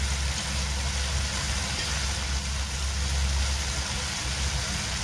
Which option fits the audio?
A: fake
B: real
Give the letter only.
B